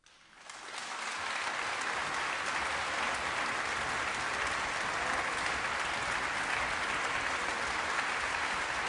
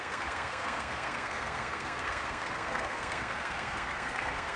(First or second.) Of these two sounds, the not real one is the second